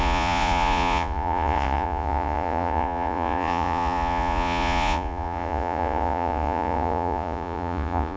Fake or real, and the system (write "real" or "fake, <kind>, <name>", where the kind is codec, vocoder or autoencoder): fake, vocoder, Vocos